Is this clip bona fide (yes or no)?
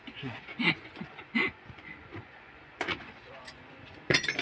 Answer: no